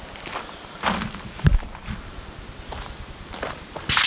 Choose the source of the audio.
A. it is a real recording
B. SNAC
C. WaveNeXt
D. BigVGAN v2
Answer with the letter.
A